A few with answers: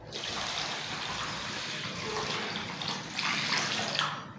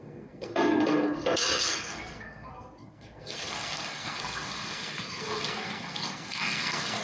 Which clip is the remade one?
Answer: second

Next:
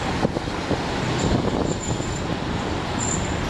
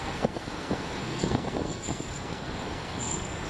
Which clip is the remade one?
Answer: second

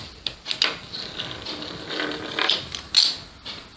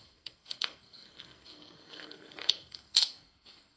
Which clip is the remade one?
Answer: second